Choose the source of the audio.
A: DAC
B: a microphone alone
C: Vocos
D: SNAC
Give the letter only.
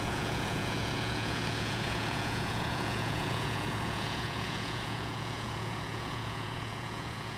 C